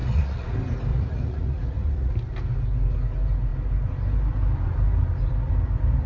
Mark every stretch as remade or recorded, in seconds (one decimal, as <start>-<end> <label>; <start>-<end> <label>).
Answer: 0.0-0.5 remade; 0.5-0.9 recorded; 0.9-2.1 remade; 2.1-6.1 recorded